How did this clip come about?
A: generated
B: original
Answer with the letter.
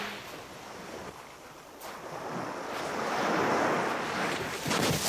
B